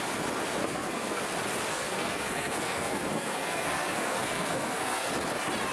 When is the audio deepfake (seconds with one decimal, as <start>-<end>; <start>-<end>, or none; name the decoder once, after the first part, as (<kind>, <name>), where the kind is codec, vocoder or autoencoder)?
0.6-1.2 (codec, SNAC); 1.7-5.1